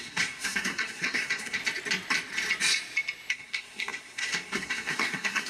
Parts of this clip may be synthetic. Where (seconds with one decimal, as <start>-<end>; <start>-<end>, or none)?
0.0-1.6; 3.3-5.5